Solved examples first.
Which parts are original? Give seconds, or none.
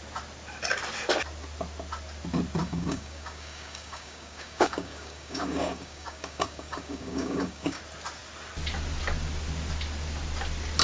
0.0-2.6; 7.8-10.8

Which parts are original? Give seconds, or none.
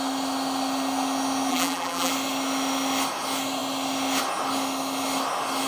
0.0-1.5; 2.1-5.7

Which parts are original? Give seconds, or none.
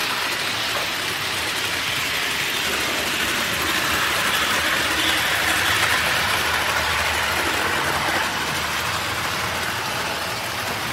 0.0-10.9